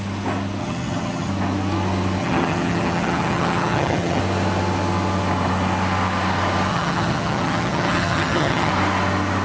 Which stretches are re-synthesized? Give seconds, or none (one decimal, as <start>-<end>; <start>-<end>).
0.6-1.3; 2.2-4.2; 6.7-8.7